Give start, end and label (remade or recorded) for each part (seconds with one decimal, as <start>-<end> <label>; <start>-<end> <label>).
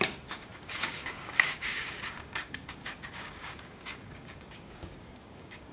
0.0-5.7 remade